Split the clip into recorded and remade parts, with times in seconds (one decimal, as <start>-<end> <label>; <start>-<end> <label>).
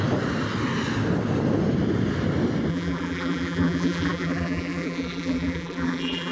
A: 0.0-2.7 recorded; 2.7-6.3 remade